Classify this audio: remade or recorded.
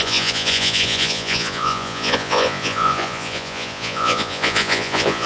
remade